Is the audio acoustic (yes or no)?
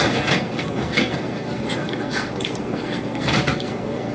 no